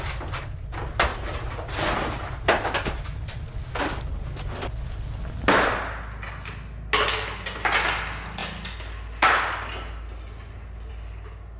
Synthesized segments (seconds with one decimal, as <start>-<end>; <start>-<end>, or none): 1.1-3.0